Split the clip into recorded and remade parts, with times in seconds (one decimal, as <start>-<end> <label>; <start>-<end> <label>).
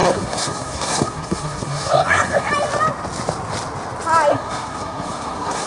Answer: 0.0-2.5 remade; 2.5-4.3 recorded; 4.3-5.7 remade